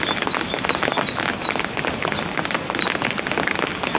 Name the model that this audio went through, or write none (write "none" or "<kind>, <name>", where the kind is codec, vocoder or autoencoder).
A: none